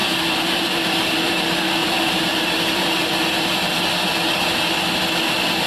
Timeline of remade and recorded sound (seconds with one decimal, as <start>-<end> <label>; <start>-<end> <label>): 0.0-1.4 remade; 1.4-1.8 recorded; 1.8-3.1 remade; 3.1-5.7 recorded